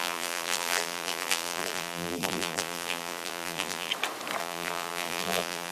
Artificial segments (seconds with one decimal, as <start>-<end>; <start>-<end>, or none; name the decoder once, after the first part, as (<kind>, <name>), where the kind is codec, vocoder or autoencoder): 0.0-3.9 (vocoder, BigVGAN v2); 4.4-5.7